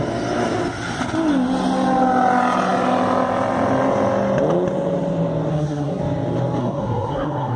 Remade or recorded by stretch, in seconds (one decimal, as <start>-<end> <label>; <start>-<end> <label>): 0.0-5.5 recorded; 5.5-6.0 remade; 6.0-6.6 recorded; 6.6-7.6 remade